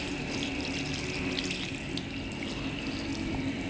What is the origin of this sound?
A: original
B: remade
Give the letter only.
A